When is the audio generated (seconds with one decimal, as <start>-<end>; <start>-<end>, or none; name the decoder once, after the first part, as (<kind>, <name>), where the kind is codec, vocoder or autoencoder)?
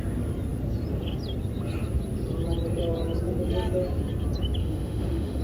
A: 4.6-5.4 (autoencoder, DAC-VAE)